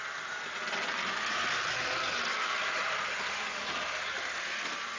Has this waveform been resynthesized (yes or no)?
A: no